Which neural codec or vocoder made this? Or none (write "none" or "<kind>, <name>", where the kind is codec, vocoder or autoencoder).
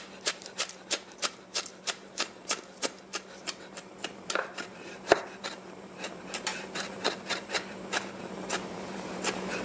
vocoder, BigVGAN v2